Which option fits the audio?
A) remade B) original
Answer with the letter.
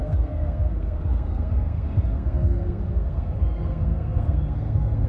A